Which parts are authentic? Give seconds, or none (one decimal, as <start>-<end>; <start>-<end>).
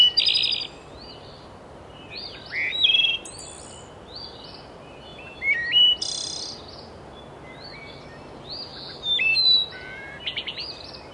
0.0-11.1